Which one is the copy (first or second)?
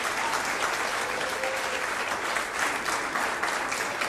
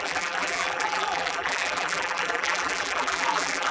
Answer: second